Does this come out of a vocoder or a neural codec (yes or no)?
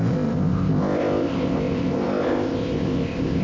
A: yes